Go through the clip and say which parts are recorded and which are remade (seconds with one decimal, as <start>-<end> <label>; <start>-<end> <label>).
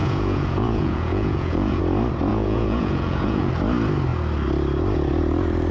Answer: 0.0-1.8 remade; 1.8-2.3 recorded; 2.3-3.5 remade; 3.5-5.7 recorded